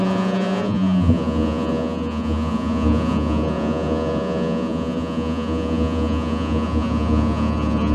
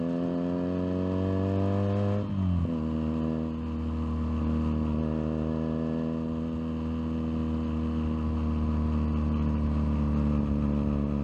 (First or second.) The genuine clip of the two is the second